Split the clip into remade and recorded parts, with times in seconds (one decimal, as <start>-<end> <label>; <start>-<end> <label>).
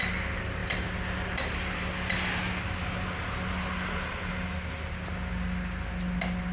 0.0-6.5 recorded